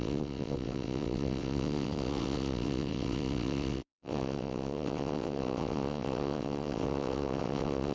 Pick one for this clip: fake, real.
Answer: fake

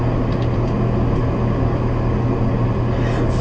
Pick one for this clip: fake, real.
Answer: real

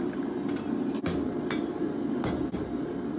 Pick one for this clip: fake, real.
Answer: real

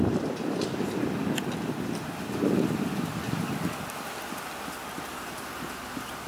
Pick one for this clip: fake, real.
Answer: real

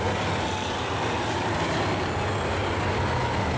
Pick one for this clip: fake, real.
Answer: real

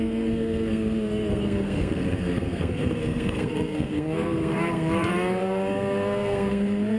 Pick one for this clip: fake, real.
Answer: fake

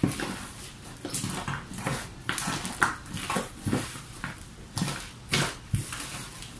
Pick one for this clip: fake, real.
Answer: real